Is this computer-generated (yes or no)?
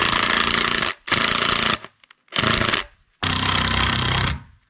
no